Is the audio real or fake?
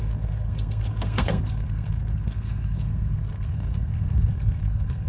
fake